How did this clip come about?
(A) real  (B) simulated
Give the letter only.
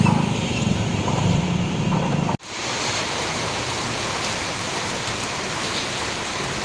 B